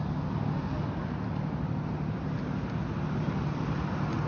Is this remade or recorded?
recorded